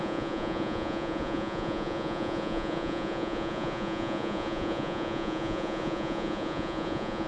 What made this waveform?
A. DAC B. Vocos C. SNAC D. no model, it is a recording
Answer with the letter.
B